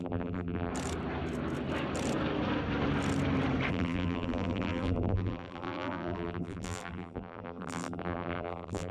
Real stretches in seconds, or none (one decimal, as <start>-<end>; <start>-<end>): 0.7-3.7